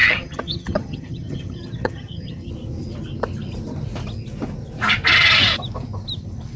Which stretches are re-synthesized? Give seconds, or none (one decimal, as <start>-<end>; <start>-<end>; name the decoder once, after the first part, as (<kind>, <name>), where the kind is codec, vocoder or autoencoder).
0.0-2.5 (vocoder, HiFi-GAN)